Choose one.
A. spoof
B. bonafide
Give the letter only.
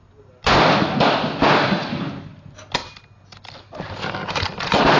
B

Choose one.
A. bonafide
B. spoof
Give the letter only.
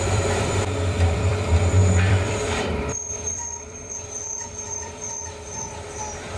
B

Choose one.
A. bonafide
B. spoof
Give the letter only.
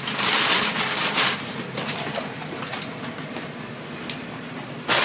B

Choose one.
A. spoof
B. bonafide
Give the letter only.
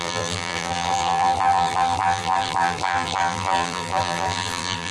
A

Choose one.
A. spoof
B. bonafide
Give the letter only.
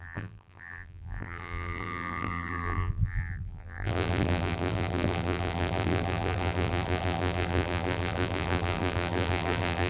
A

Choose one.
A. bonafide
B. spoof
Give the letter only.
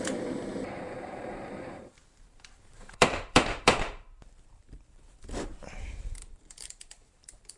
B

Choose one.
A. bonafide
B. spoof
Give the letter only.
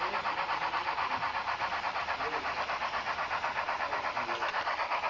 A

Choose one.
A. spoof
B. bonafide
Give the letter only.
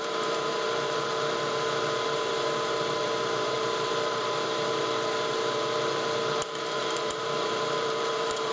A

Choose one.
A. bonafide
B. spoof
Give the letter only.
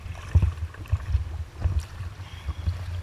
B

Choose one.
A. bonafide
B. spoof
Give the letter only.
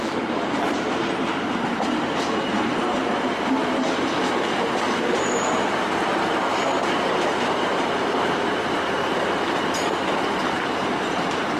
B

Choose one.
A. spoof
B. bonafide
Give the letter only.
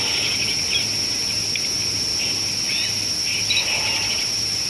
B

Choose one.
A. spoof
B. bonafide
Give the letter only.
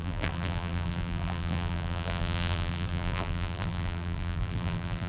A